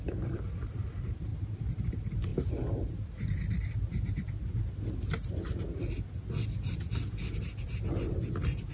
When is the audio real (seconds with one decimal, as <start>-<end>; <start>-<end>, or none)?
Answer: 3.4-7.4